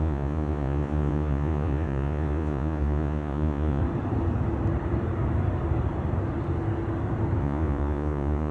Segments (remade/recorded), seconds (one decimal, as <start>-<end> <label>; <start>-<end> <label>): 0.0-3.8 remade; 3.8-7.4 recorded; 7.4-8.5 remade